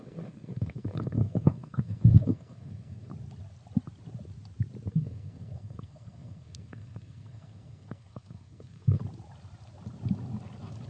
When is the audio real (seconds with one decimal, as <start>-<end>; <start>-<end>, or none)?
3.1-4.9; 9.0-10.9